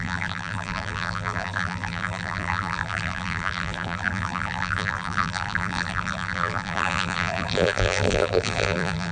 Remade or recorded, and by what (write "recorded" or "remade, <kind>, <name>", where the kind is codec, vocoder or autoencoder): remade, vocoder, BigVGAN v2